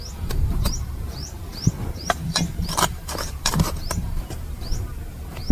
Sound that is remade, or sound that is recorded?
remade